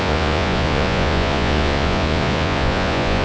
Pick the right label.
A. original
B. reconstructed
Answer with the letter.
B